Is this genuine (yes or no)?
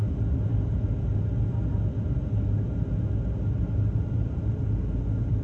yes